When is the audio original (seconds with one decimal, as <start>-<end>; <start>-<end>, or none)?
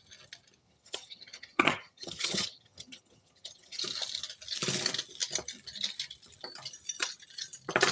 0.0-0.6; 3.8-7.9